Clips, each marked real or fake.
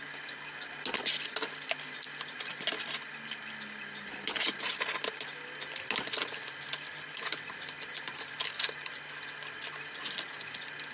real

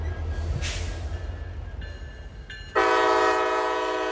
real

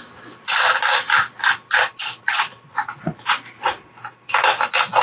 real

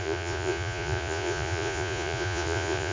fake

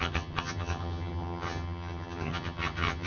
fake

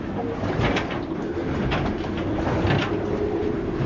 real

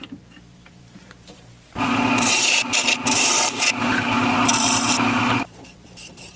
fake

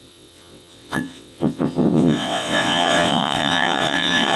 fake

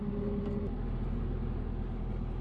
real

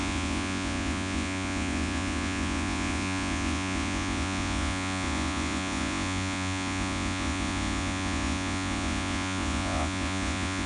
fake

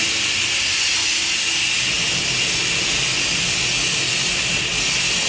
real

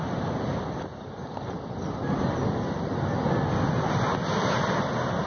real